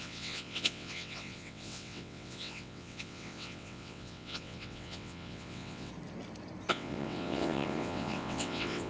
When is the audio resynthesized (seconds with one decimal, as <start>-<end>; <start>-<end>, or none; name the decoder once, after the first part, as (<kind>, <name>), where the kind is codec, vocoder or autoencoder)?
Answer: 0.0-5.9 (vocoder, WaveNeXt); 6.7-8.9